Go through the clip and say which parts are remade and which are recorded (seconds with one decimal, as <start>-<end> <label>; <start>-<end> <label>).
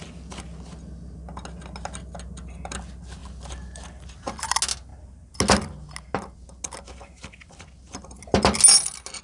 0.0-3.2 recorded; 3.2-4.4 remade; 4.4-9.2 recorded